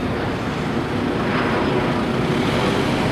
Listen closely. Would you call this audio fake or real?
real